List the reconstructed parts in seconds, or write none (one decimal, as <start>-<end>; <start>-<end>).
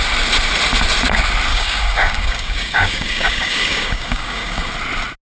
1.5-4.7